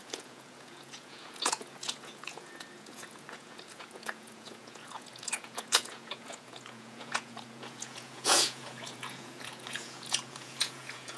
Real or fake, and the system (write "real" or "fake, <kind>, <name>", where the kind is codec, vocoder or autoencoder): fake, vocoder, Vocos